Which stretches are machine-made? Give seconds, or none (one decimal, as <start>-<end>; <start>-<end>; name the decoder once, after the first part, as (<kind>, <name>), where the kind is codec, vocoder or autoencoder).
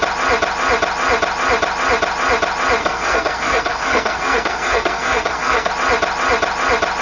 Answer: 2.8-5.7 (codec, SNAC)